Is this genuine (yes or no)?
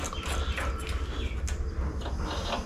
yes